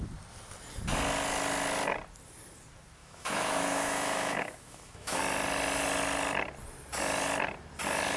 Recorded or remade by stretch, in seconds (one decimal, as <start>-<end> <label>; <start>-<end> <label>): 0.0-3.0 recorded; 3.0-5.2 remade; 5.2-8.2 recorded